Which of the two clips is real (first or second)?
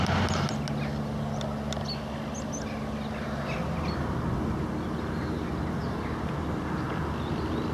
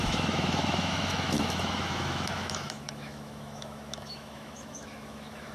first